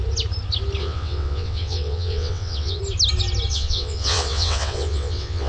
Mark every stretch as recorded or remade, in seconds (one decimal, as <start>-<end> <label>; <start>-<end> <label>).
0.0-0.8 recorded; 0.8-2.8 remade; 2.8-3.5 recorded; 3.5-5.5 remade